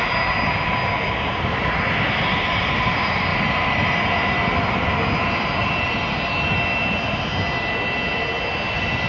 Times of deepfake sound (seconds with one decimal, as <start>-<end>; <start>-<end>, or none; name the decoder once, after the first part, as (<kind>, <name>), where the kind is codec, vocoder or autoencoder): none